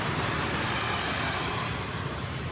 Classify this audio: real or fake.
fake